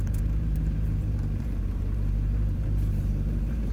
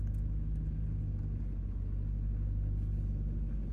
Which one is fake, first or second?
first